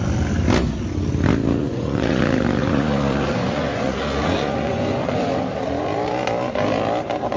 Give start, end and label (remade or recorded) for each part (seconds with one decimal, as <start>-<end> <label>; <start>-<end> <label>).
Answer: 0.0-1.6 recorded; 1.6-2.2 remade; 2.2-2.6 recorded; 2.6-5.3 remade; 5.3-7.4 recorded